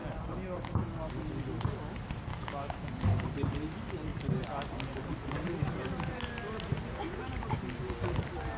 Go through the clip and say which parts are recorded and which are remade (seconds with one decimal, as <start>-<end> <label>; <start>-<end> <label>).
0.0-2.3 recorded; 2.3-2.9 remade; 2.9-8.6 recorded